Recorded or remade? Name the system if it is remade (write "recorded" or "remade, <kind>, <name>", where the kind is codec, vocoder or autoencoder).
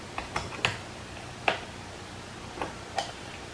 recorded